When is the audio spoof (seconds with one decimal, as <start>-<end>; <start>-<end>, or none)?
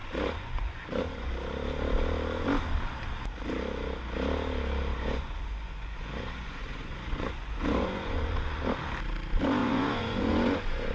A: 0.0-1.3; 4.9-8.6; 9.6-10.9